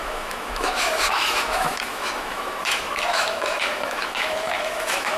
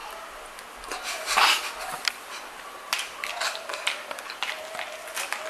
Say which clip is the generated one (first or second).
first